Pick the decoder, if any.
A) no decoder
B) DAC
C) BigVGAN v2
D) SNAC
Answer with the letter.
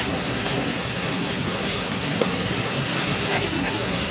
D